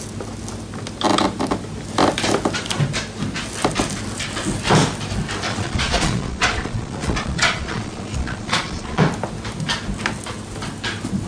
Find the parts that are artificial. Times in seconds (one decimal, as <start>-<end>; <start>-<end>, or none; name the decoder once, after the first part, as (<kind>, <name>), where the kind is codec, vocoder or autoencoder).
5.5-9.0 (vocoder, Vocos)